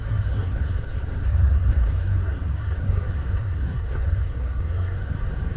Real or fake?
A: fake